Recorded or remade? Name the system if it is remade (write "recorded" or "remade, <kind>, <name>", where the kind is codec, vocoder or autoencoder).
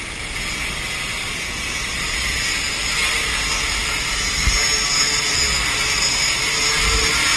recorded